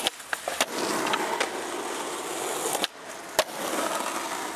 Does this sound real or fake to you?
real